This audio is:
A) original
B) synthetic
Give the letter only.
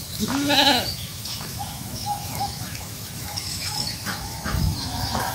B